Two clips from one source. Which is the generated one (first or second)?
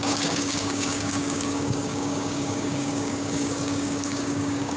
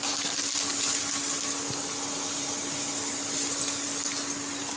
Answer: first